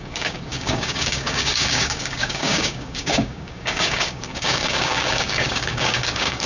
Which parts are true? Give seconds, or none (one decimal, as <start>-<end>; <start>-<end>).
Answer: none